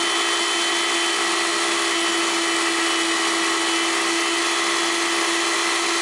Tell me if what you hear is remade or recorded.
recorded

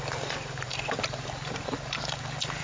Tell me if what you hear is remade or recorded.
remade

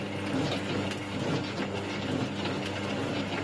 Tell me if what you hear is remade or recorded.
recorded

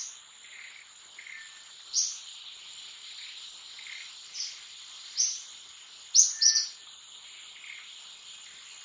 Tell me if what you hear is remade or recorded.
recorded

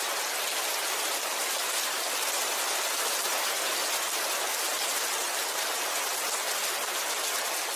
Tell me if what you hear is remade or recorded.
recorded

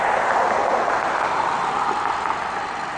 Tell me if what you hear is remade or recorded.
recorded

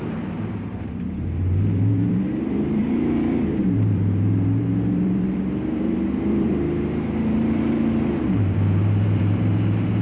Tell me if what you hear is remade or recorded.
remade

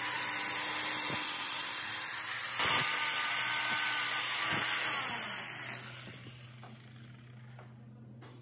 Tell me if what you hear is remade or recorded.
recorded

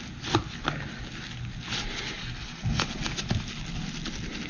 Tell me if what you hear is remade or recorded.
recorded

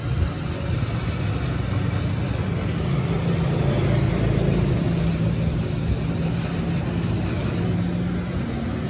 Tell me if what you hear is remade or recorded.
recorded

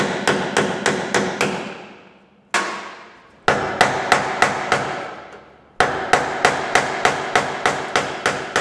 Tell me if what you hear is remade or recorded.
recorded